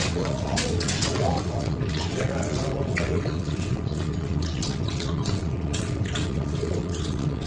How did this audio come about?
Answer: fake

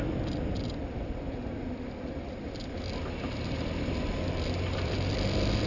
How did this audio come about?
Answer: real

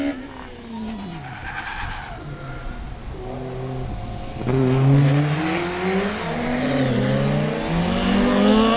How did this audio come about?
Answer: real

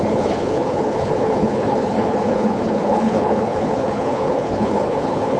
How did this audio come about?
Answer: fake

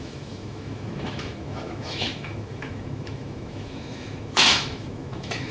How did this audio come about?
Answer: fake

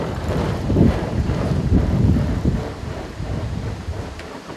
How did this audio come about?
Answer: fake